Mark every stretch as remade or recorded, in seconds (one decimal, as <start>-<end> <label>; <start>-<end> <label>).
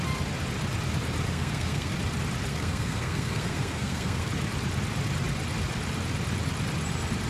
0.0-1.3 recorded; 1.3-1.9 remade; 1.9-2.5 recorded; 2.5-4.3 remade; 4.3-7.3 recorded